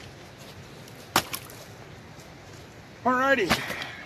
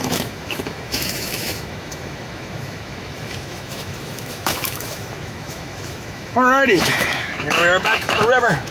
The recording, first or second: first